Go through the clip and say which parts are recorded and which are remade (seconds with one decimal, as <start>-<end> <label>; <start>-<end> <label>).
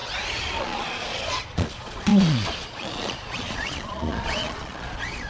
0.0-0.6 recorded; 0.6-5.3 remade